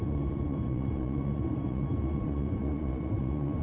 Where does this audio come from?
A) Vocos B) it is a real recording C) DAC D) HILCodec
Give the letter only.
A